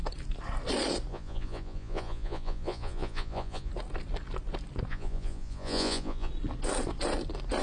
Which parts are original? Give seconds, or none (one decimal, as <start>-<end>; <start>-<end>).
0.0-1.1; 3.7-4.9; 6.3-7.6